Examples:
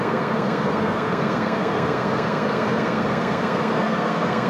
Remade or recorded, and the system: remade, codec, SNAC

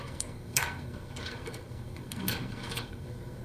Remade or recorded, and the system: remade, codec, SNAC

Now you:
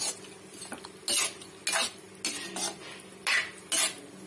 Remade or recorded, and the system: recorded